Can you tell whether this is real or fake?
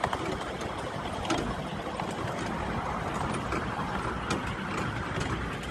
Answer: real